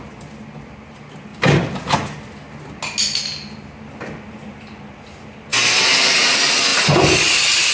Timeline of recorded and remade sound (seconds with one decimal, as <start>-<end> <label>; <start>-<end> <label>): 0.0-7.7 recorded